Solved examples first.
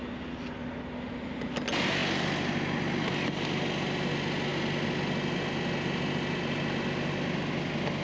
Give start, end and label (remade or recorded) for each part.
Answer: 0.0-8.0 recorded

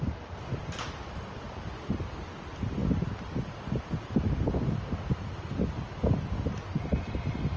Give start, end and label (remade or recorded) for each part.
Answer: 0.0-2.8 recorded; 2.8-3.7 remade; 3.7-7.6 recorded

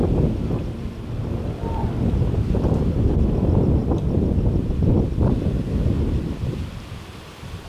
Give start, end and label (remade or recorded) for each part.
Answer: 0.0-7.7 recorded

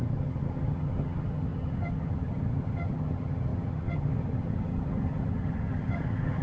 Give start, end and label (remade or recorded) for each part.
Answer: 0.0-6.4 remade